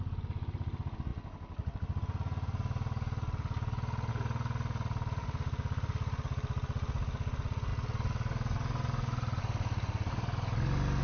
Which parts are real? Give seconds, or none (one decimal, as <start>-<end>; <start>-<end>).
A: 0.0-11.0